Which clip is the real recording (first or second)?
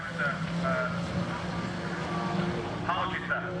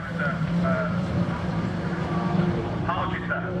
first